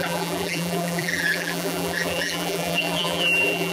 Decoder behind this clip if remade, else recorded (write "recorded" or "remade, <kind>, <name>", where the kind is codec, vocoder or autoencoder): remade, vocoder, BigVGAN v2